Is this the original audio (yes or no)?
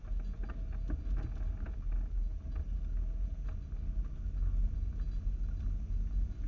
yes